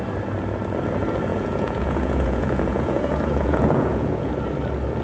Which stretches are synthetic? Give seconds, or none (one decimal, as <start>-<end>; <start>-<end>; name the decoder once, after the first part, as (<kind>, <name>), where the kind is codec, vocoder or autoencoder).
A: 1.3-4.3 (vocoder, Vocos)